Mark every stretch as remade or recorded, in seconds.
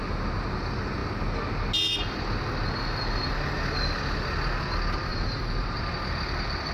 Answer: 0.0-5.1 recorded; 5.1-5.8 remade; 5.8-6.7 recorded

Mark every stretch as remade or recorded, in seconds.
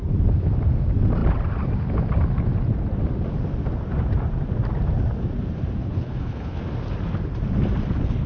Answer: 0.0-5.8 recorded; 5.8-6.6 remade; 6.6-8.3 recorded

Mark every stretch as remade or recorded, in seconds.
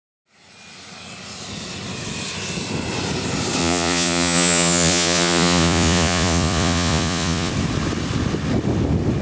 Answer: 0.0-3.6 recorded; 3.6-7.5 remade; 7.5-9.2 recorded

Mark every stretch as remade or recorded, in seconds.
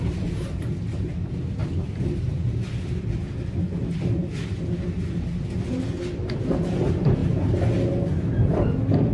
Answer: 0.0-9.1 recorded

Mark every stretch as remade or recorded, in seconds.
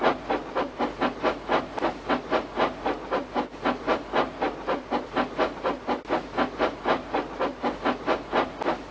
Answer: 0.0-8.9 recorded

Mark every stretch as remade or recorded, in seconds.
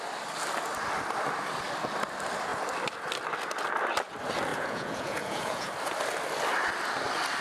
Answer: 0.0-4.5 recorded; 4.5-5.7 remade; 5.7-7.4 recorded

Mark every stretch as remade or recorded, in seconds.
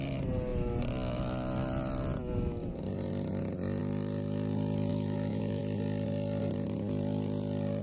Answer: 0.0-4.9 recorded; 4.9-5.6 remade; 5.6-7.8 recorded